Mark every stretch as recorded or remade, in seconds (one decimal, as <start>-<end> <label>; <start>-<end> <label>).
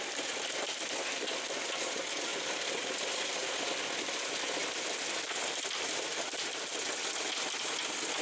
0.0-2.3 recorded; 2.3-3.8 remade; 3.8-8.2 recorded